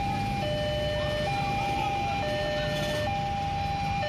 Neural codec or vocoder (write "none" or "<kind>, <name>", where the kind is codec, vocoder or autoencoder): none